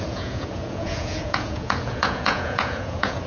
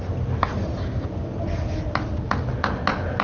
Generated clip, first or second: first